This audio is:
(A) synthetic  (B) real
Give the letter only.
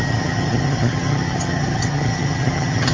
A